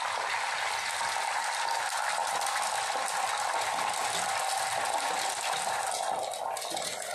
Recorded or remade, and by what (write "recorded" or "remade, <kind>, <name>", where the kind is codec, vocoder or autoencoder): recorded